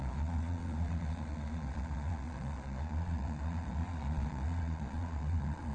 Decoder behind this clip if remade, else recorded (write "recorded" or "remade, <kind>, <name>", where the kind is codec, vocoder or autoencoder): remade, vocoder, Vocos